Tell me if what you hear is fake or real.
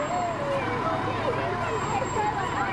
real